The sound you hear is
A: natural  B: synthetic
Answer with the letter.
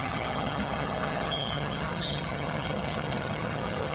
B